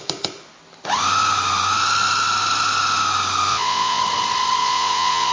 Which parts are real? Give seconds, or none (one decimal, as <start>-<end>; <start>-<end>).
0.0-3.5; 4.0-4.6